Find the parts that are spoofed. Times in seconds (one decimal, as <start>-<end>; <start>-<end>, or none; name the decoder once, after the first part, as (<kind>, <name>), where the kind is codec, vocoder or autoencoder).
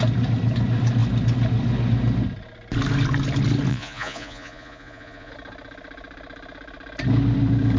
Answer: 3.7-5.3 (vocoder, Vocos)